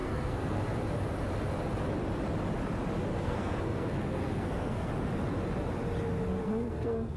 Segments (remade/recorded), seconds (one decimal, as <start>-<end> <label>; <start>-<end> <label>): 0.0-0.6 remade; 0.6-3.1 recorded; 3.1-4.9 remade; 4.9-6.4 recorded; 6.4-7.2 remade